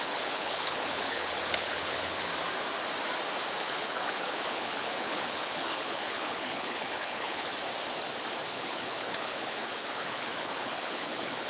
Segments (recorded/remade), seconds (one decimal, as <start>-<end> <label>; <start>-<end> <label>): 0.0-2.3 remade; 2.3-3.6 recorded; 3.6-7.5 remade; 7.5-8.5 recorded; 8.5-11.5 remade